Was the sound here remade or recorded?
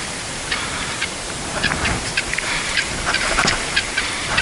remade